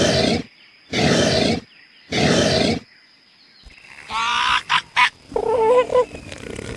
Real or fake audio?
real